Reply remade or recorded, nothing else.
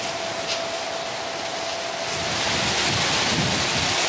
recorded